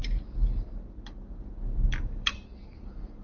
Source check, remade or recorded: remade